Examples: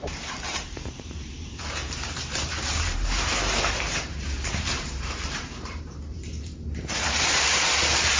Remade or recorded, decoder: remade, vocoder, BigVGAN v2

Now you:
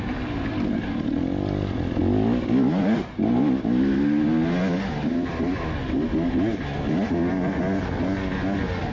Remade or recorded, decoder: recorded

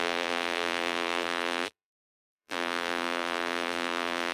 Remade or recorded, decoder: remade, vocoder, BigVGAN v2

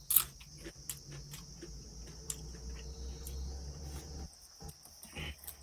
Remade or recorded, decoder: recorded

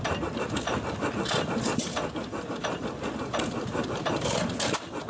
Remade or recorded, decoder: remade, vocoder, BigVGAN v2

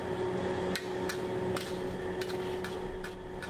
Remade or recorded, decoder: recorded